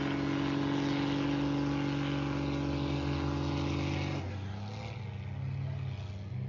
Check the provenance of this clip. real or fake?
real